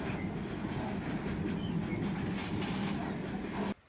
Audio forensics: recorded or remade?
recorded